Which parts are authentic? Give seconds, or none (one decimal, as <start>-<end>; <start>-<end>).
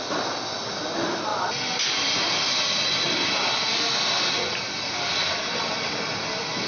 0.0-6.7